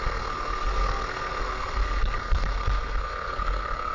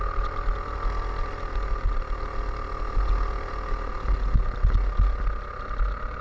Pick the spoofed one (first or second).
first